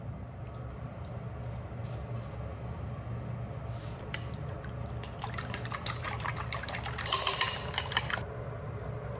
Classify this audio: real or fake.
real